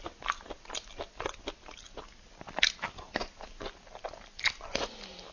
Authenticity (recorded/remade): recorded